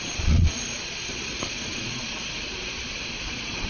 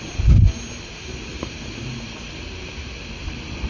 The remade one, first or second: first